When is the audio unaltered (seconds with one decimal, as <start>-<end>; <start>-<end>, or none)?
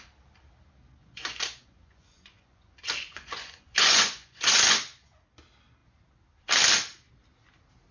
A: 0.0-1.0; 5.2-7.9